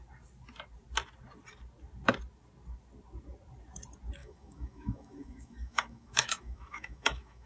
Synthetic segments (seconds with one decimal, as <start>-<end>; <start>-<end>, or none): 4.2-7.5

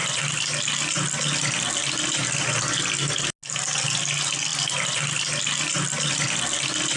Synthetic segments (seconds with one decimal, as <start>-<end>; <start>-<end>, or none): none

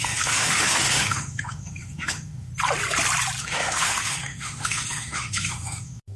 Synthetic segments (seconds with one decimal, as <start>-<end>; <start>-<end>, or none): 0.0-2.5; 3.4-6.2

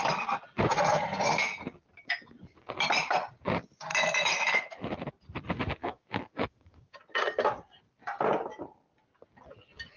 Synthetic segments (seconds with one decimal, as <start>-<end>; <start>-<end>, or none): 3.9-4.9; 5.8-7.0

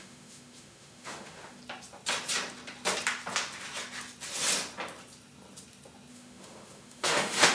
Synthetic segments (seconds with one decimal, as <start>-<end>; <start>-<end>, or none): 0.0-1.6; 6.1-7.5

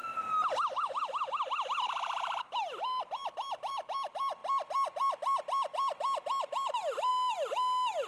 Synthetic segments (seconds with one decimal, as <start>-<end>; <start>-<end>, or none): none

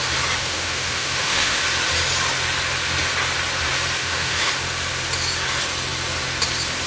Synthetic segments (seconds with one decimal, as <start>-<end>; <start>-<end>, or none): 0.4-1.6; 4.0-4.5

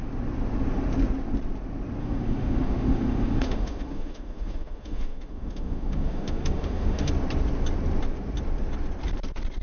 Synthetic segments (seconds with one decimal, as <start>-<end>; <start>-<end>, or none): 2.0-7.1